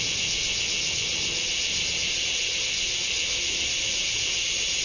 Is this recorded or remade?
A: recorded